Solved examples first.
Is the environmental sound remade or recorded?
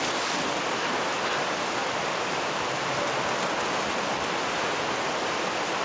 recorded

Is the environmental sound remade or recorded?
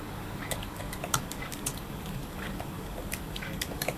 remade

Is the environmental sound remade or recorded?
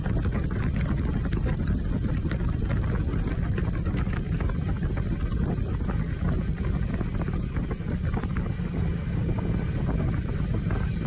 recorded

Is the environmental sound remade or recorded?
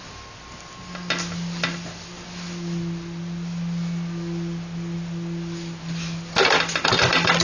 recorded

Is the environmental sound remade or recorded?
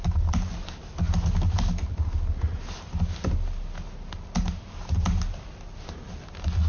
recorded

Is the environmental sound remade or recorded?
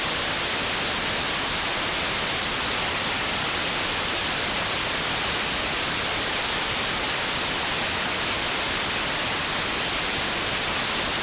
recorded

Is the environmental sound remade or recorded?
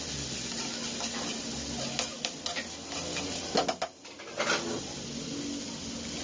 recorded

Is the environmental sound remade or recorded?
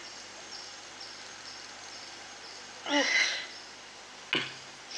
recorded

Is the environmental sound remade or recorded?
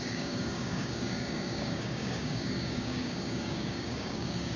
remade